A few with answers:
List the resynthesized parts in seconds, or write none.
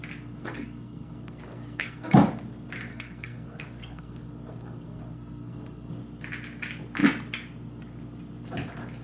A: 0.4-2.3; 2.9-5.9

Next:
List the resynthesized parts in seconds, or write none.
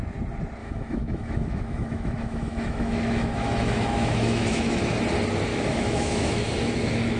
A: 0.6-4.9; 5.5-7.2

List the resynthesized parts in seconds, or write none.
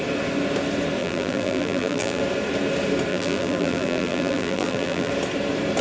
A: 1.0-2.2; 3.1-5.1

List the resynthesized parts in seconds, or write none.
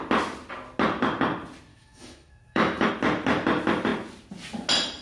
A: 1.7-2.9